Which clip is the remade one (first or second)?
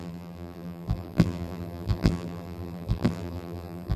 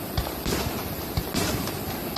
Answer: first